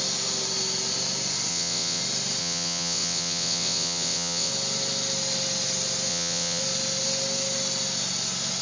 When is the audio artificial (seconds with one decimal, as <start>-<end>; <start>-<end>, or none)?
1.5-2.0; 2.4-4.5; 6.1-6.6